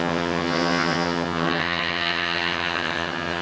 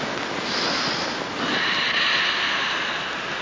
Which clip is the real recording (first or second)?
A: second